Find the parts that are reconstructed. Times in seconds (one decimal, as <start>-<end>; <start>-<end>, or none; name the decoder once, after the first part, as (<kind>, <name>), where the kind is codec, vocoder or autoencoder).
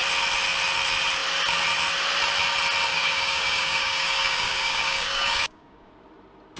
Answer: 2.9-5.9 (codec, DAC)